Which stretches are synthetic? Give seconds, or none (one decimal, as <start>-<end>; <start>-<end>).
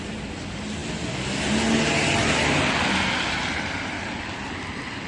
none